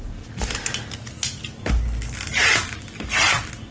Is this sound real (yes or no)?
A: yes